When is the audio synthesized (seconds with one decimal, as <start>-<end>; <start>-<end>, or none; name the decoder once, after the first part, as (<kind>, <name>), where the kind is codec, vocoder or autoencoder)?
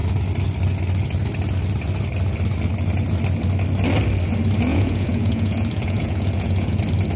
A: 4.7-6.8 (vocoder, Vocos)